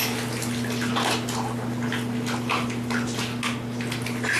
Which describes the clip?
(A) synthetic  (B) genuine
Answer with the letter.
B